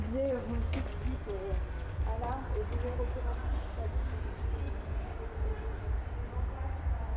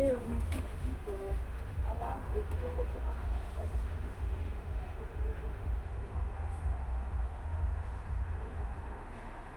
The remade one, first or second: second